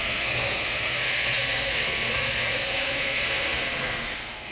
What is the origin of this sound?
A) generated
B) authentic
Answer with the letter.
A